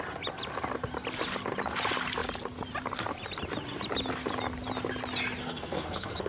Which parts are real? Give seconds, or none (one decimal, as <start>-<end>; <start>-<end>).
0.0-5.4